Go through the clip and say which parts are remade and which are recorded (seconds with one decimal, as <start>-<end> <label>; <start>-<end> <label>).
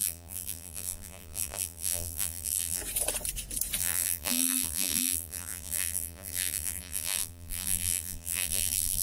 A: 0.0-2.8 remade; 2.8-3.8 recorded; 3.8-9.0 remade